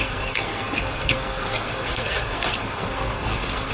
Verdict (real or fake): fake